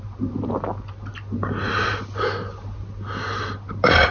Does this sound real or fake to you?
real